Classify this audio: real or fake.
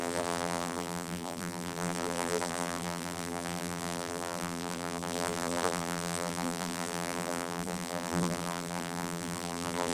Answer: fake